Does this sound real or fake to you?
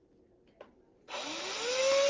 real